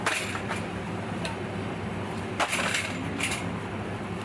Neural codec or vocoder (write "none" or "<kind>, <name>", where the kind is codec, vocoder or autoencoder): none